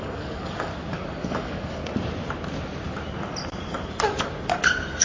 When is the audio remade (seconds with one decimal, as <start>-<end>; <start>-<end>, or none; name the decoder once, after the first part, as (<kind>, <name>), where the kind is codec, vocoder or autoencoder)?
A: 0.0-0.7 (codec, DAC); 1.2-1.8